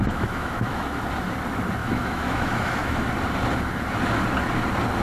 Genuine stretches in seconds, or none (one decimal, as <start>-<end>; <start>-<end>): 1.0-1.8; 3.1-5.0